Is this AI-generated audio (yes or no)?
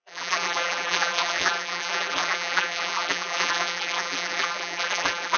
yes